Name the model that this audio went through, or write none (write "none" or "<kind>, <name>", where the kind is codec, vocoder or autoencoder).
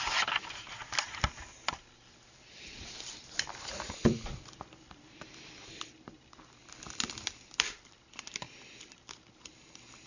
vocoder, BigVGAN v2